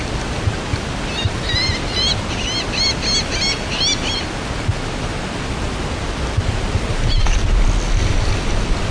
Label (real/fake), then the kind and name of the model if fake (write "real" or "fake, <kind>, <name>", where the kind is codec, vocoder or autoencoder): real